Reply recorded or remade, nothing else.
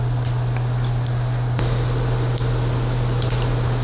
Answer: recorded